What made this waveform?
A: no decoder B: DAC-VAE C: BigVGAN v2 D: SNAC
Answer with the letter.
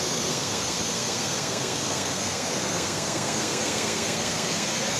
D